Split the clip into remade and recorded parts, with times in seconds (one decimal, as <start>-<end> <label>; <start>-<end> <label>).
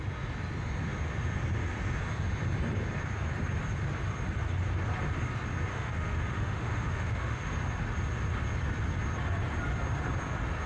0.0-5.7 recorded; 5.7-7.5 remade; 7.5-10.7 recorded